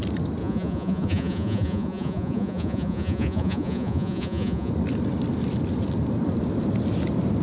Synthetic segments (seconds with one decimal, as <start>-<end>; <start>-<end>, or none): 0.4-4.7